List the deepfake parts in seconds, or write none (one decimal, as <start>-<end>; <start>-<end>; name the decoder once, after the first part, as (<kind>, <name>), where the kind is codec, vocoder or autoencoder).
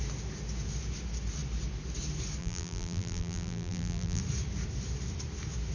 2.4-4.2 (vocoder, BigVGAN v2)